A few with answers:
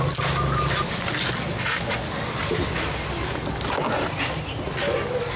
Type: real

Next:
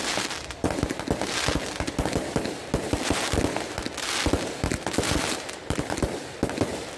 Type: real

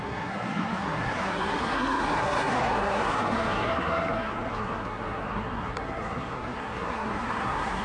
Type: fake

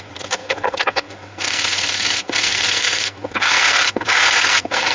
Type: fake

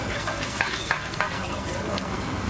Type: fake